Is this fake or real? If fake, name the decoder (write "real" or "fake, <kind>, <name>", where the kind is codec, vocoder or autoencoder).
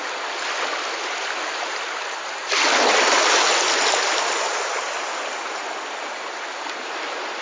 real